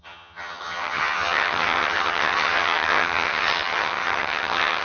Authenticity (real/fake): fake